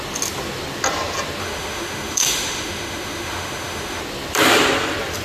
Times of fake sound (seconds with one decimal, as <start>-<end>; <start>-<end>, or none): 1.4-4.0